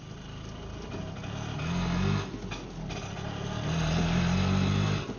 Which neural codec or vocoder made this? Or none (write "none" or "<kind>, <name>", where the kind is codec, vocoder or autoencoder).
none